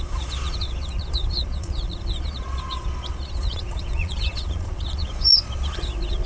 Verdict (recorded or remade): remade